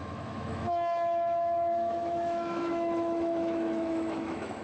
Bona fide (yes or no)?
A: no